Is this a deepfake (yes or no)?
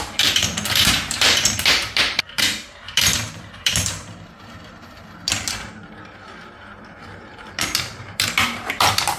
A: yes